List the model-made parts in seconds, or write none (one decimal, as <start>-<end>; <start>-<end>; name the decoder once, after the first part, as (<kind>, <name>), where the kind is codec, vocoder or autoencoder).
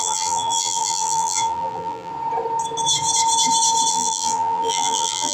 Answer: 0.0-2.1 (vocoder, BigVGAN v2); 3.9-5.3